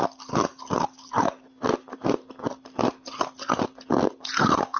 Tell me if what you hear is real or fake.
real